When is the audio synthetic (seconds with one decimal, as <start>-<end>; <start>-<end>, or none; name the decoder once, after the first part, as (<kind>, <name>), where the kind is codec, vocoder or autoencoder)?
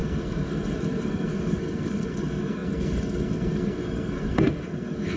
0.0-5.2 (codec, SNAC)